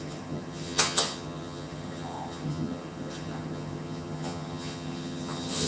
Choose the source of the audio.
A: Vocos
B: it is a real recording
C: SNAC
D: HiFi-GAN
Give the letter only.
D